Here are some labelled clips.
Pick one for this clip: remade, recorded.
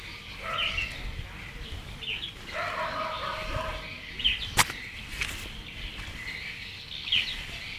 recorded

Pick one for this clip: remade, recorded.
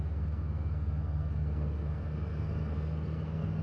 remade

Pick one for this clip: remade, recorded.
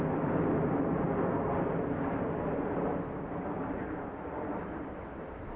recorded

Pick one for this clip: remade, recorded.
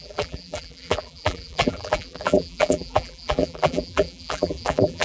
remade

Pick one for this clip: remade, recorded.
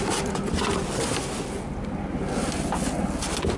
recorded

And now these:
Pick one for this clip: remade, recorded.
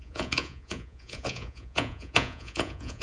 remade